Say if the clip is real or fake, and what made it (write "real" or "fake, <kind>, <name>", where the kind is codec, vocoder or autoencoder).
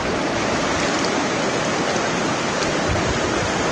real